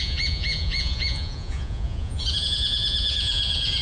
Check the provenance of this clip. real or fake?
fake